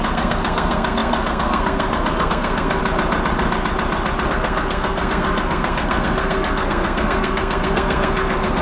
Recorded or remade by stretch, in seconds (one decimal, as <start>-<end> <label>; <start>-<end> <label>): 0.0-2.8 remade; 2.8-4.3 recorded; 4.3-8.6 remade